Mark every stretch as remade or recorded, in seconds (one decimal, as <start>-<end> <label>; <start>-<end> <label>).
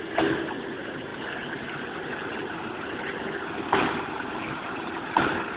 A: 0.0-5.6 recorded